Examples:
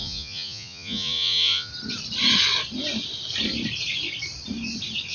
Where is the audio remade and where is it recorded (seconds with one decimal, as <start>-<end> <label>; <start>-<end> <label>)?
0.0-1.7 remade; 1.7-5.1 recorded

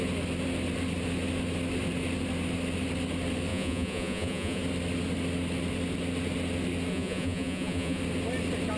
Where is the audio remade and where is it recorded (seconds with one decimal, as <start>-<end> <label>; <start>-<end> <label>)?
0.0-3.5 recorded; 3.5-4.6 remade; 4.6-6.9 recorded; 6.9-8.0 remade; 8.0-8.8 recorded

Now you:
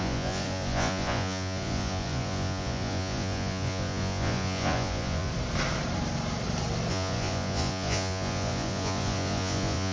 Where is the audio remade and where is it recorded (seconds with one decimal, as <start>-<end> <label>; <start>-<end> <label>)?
0.0-5.3 remade; 5.3-6.9 recorded; 6.9-9.9 remade